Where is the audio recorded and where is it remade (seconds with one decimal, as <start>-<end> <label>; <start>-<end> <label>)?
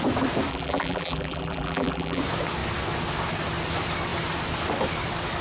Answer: 0.0-0.5 recorded; 0.5-2.2 remade; 2.2-5.4 recorded